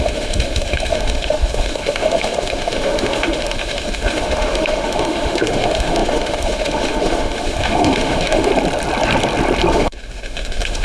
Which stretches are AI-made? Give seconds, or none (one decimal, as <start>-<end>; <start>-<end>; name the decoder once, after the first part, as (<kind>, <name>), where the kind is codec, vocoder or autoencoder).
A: 0.0-8.5 (autoencoder, DAC-VAE); 9.7-10.8